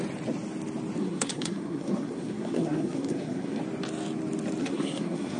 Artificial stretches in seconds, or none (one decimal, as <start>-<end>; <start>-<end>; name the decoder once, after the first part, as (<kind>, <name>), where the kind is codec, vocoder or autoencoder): 1.0-3.6 (codec, SNAC); 4.6-5.4